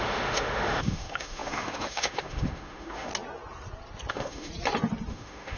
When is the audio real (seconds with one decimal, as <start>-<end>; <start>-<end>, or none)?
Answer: 3.1-4.1; 4.5-5.1